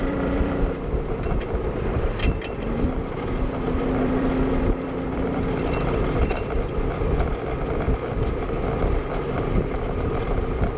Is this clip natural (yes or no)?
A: no